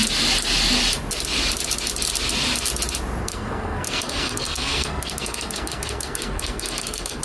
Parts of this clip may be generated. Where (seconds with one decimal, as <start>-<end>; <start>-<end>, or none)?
3.2-7.2